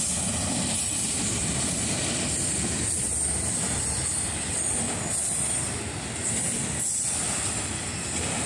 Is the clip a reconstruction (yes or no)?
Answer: no